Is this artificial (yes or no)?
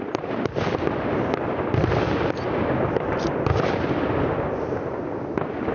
no